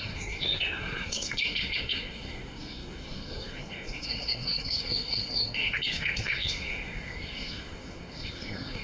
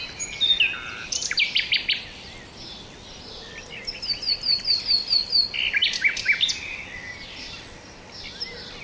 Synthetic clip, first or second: first